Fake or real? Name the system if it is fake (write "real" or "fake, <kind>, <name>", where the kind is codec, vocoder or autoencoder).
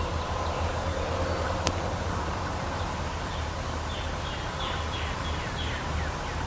real